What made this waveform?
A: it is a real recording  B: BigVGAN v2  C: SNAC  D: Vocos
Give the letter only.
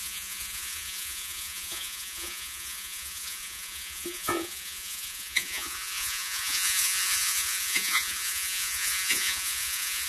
D